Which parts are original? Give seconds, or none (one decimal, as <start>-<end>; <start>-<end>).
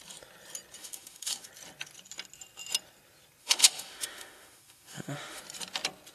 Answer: 0.0-0.8; 1.5-3.4; 5.4-6.1